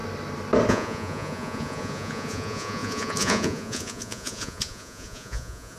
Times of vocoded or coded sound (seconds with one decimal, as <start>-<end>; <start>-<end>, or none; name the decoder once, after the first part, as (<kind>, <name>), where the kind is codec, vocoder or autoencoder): 0.7-5.8 (vocoder, Vocos)